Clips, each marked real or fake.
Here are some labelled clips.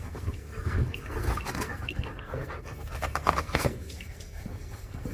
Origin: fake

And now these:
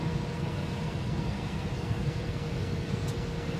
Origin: fake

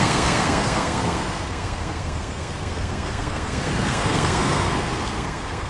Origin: fake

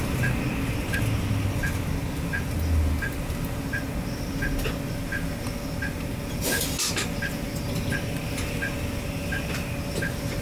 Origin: real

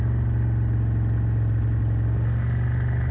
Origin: real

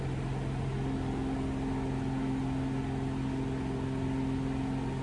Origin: real